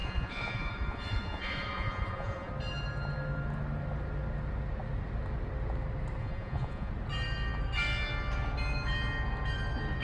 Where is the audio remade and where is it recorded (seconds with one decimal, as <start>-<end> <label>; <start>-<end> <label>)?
0.0-2.5 remade; 2.5-6.2 recorded; 6.2-6.9 remade; 6.9-10.0 recorded